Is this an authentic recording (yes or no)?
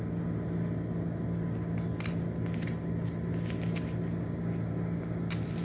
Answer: yes